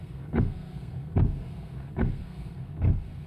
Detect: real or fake fake